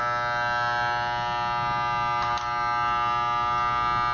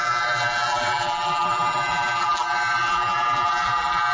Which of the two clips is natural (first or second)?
first